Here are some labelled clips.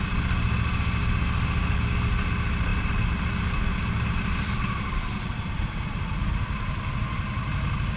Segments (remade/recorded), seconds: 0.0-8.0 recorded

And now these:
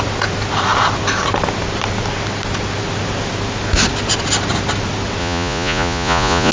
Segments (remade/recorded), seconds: 0.0-5.2 recorded; 5.2-6.5 remade

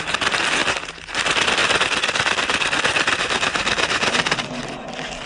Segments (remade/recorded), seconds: 0.0-5.3 recorded